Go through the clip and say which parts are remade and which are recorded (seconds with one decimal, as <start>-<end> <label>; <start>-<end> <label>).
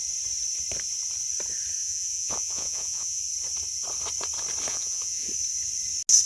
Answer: 0.0-1.8 recorded; 1.8-3.2 remade; 3.2-4.7 recorded; 4.7-5.3 remade; 5.3-6.3 recorded